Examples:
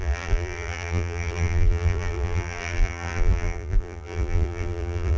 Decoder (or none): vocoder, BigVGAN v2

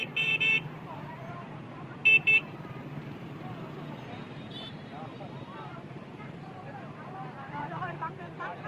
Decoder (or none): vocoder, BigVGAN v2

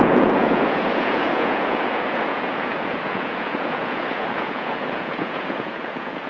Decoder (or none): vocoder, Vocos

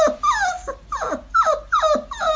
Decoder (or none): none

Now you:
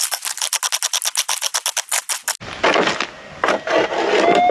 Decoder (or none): none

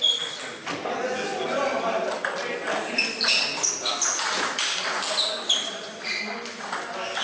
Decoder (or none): none